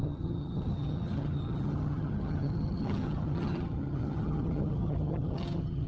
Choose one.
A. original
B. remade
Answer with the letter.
B